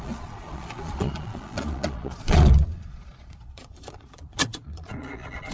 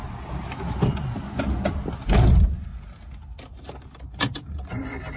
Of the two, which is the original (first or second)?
second